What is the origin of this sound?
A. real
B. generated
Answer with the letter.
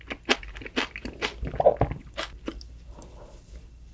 A